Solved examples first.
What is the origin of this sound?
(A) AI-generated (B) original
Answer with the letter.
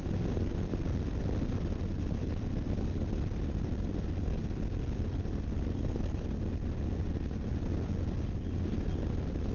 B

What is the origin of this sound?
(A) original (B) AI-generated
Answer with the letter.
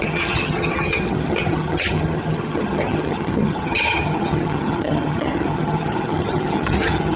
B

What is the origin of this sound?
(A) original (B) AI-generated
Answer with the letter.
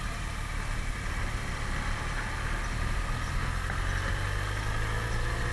A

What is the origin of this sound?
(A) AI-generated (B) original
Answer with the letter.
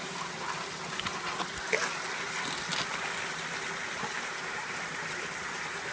B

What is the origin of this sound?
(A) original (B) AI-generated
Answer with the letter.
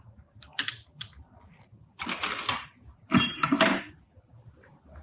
A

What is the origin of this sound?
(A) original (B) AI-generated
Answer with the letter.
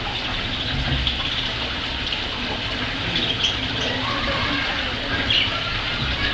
A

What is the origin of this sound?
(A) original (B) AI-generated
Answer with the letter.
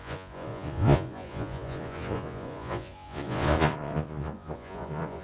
B